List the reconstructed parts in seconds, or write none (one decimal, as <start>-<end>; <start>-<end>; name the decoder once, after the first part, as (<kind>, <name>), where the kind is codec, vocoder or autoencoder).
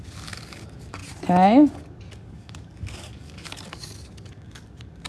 0.0-1.0 (codec, DAC); 1.7-5.1